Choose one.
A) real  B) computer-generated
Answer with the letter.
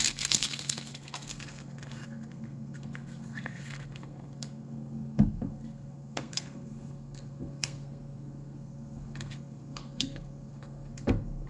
B